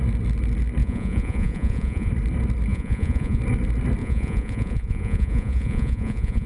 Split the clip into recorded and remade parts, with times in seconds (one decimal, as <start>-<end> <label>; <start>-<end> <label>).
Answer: 0.0-0.8 recorded; 0.8-2.1 remade; 2.1-2.7 recorded; 2.7-3.4 remade; 3.4-4.0 recorded; 4.0-6.5 remade